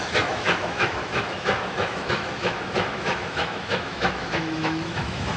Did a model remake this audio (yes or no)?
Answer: yes